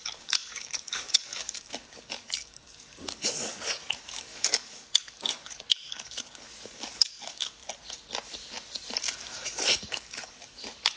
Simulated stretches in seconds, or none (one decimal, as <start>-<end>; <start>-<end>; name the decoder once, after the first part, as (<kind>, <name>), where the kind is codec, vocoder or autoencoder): 0.0-7.6 (codec, DAC); 9.3-11.0